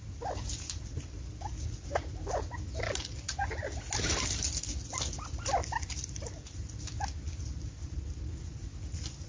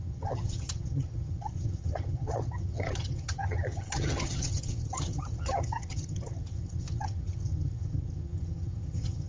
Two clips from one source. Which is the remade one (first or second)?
second